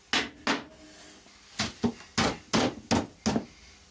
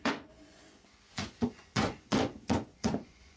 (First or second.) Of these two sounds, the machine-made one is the second